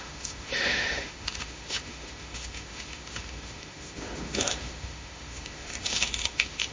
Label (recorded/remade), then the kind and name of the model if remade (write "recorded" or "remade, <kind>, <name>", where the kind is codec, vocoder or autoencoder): remade, autoencoder, DAC-VAE